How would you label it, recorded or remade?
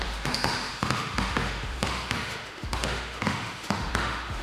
remade